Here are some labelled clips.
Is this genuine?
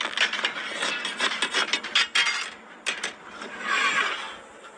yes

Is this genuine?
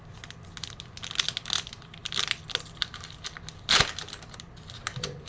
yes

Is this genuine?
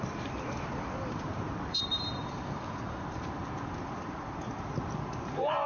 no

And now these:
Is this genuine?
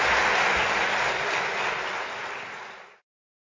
yes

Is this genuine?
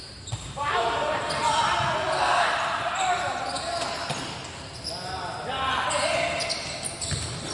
yes